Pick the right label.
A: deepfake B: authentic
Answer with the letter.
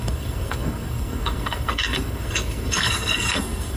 A